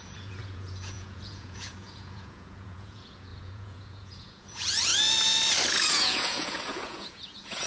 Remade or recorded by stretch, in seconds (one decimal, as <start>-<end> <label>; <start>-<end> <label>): 0.0-4.9 remade; 4.9-5.7 recorded; 5.7-7.7 remade